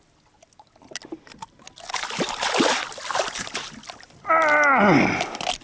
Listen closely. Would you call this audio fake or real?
real